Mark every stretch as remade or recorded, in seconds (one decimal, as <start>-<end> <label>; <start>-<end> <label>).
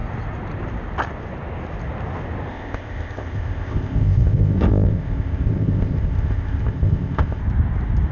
0.0-2.5 recorded; 2.5-7.4 remade; 7.4-8.1 recorded